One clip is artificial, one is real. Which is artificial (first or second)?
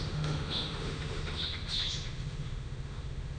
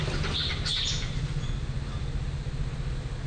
first